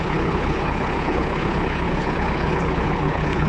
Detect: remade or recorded remade